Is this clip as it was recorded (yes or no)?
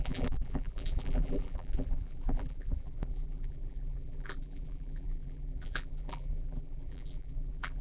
no